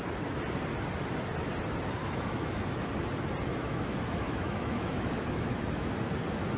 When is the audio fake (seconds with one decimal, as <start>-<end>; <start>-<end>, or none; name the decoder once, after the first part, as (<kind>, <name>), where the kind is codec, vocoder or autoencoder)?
2.0-2.9 (autoencoder, DAC-VAE); 3.5-6.1